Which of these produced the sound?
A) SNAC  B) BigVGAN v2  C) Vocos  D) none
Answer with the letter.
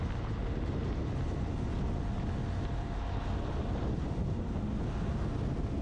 D